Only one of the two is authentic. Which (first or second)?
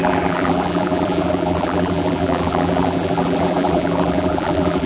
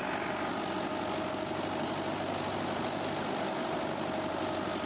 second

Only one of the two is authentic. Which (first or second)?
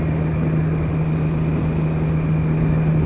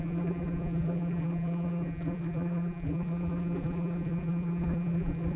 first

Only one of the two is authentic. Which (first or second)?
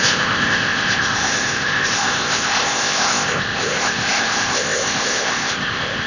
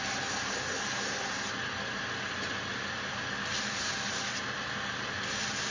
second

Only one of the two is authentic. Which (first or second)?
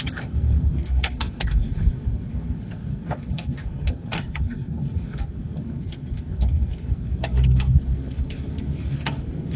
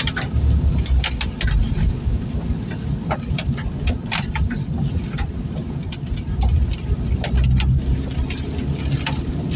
second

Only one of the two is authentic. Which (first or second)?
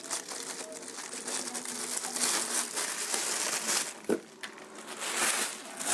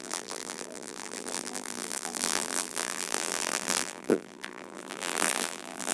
first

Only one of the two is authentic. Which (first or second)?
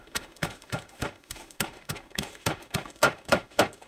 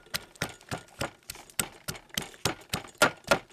second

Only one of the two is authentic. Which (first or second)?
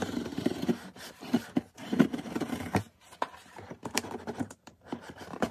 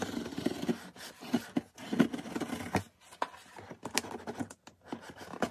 second